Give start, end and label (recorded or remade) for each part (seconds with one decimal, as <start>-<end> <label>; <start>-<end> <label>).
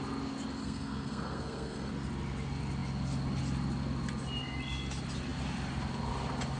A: 0.0-0.6 recorded; 0.6-1.9 remade; 1.9-6.6 recorded